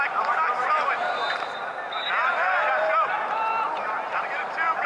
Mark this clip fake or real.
fake